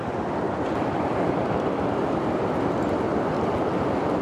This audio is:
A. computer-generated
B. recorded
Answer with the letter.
B